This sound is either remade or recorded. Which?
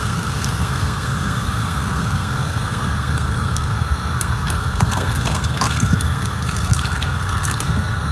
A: remade